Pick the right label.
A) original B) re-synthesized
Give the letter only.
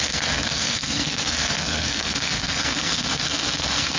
B